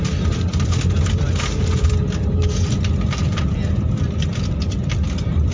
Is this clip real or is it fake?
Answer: real